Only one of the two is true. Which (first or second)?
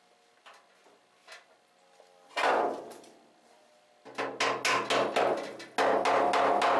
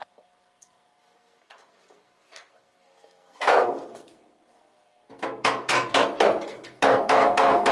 first